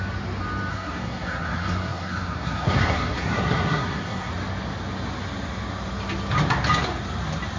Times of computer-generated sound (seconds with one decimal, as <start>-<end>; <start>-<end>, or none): 0.7-4.3